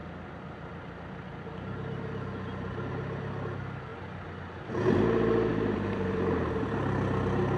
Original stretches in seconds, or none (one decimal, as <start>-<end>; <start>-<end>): 0.0-3.9; 4.7-5.5; 6.6-7.6